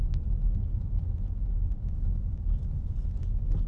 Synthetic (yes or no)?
no